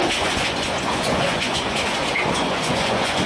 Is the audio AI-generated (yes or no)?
yes